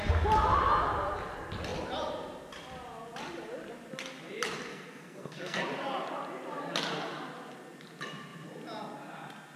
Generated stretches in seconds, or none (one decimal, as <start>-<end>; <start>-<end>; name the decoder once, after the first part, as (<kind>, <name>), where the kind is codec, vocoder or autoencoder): 4.7-5.6 (codec, SNAC)

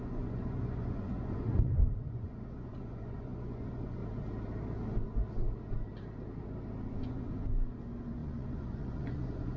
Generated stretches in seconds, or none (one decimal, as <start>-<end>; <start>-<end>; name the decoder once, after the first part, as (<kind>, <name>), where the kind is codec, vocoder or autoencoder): 0.0-4.0 (vocoder, Vocos); 6.9-9.6

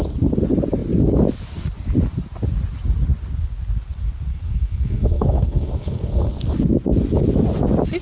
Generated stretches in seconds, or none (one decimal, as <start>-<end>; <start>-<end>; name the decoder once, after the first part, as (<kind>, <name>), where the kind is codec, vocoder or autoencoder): 4.3-6.3 (codec, SNAC)

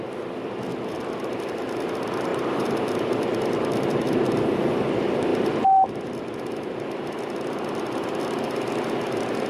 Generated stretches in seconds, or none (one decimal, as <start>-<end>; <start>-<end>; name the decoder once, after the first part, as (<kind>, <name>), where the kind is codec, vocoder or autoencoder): 0.7-1.3 (vocoder, BigVGAN v2); 2.3-4.7; 5.3-8.2